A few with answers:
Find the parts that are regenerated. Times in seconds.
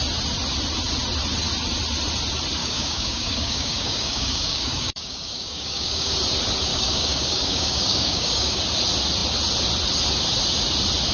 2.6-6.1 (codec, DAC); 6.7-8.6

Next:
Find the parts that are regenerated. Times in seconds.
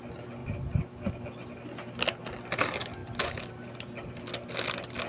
none